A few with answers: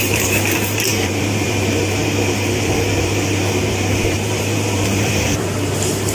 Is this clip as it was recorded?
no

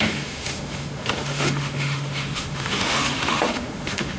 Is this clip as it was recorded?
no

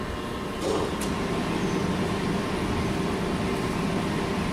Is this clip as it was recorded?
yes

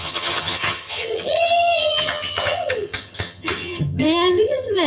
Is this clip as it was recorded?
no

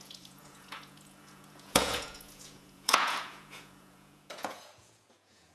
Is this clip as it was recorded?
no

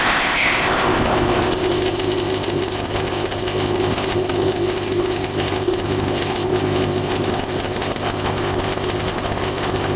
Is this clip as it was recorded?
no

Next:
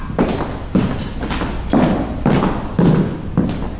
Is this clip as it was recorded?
yes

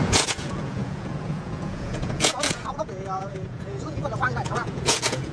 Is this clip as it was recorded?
no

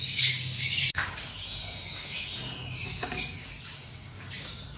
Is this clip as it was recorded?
no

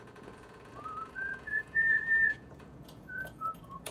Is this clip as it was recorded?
no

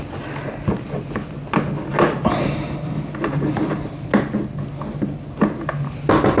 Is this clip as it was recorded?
yes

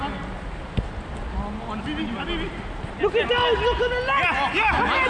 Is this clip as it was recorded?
yes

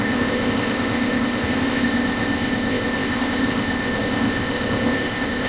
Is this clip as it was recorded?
no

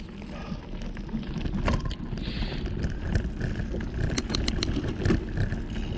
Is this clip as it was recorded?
yes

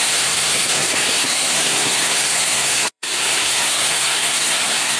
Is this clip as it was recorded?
no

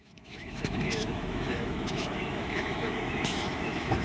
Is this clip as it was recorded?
no